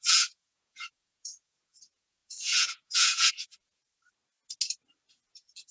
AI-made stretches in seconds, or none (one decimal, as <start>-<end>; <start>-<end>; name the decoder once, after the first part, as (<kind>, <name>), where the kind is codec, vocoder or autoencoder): 0.0-3.8 (vocoder, Vocos); 5.1-5.7